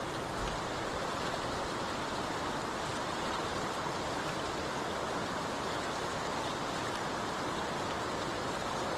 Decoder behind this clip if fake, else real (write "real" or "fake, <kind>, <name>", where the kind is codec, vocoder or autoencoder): real